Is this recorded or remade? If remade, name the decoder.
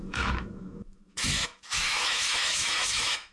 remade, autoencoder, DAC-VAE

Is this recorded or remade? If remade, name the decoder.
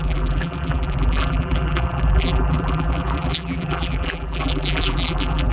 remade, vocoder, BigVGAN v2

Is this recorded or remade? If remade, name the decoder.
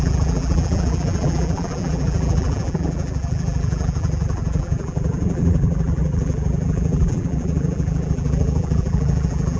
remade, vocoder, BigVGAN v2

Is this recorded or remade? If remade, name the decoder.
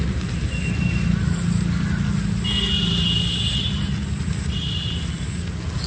recorded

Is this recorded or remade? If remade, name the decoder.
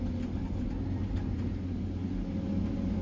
recorded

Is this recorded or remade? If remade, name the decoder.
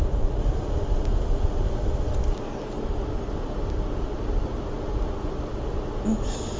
recorded